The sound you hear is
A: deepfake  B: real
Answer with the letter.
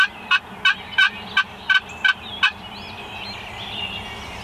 B